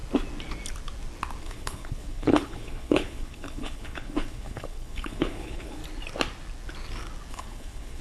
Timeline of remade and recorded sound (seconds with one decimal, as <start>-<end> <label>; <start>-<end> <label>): 0.0-1.4 recorded; 1.4-5.8 remade; 5.8-7.3 recorded; 7.3-8.0 remade

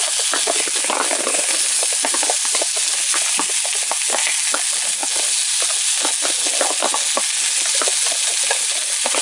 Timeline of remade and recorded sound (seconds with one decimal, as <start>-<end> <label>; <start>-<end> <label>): 0.0-9.2 recorded

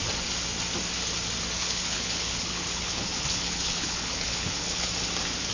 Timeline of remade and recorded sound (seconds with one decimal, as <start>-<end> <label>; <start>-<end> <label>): 0.0-1.6 recorded; 1.6-4.9 remade; 4.9-5.5 recorded

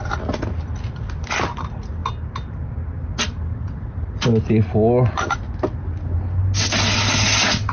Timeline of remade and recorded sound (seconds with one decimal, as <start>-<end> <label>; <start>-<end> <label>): 0.0-7.7 recorded